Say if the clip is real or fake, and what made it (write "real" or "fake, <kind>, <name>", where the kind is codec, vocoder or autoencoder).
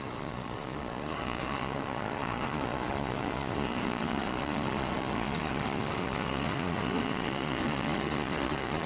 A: fake, vocoder, Vocos